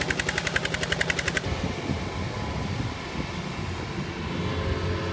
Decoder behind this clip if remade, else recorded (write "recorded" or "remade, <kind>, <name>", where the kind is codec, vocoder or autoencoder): recorded